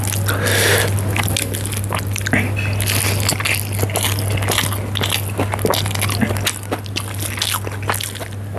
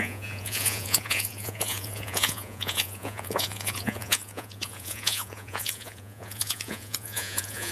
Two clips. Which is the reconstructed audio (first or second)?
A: second